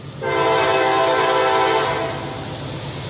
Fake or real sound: real